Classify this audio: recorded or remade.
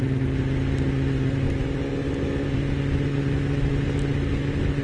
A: recorded